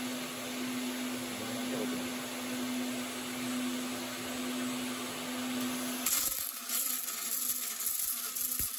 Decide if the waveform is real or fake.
real